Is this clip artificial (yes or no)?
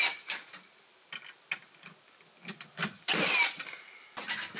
no